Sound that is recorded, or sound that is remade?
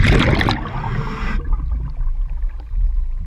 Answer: recorded